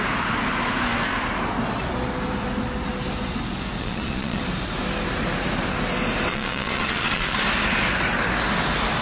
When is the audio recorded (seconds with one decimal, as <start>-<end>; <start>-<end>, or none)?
0.0-3.8; 4.4-6.3; 7.4-9.0